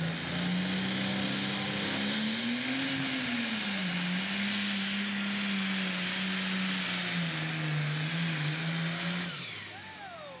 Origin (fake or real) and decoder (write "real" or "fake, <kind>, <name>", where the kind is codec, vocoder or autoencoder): real